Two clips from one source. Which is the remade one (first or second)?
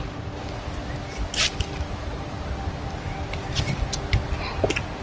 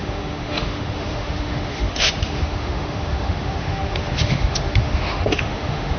second